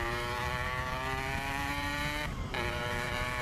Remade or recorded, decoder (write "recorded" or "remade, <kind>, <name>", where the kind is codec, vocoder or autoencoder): remade, vocoder, BigVGAN v2